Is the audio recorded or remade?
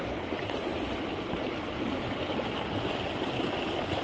recorded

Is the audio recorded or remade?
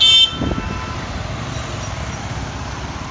recorded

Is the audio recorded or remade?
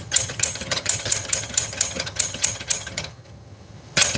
remade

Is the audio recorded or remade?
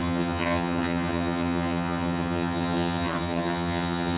remade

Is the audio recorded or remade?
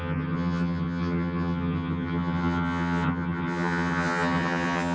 remade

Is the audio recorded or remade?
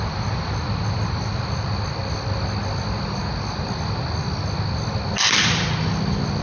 recorded